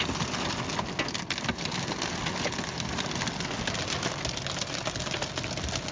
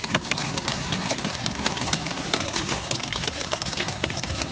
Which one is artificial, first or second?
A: second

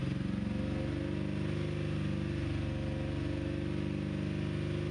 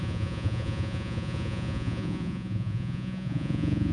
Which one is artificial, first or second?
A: second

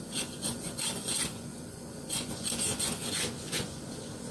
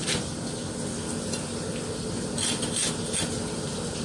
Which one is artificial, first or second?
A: first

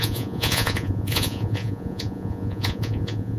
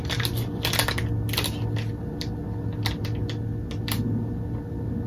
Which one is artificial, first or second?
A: first